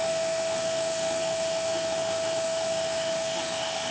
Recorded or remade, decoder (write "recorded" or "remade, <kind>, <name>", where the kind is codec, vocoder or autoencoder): remade, autoencoder, DAC-VAE